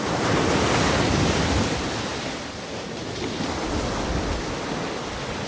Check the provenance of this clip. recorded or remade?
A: recorded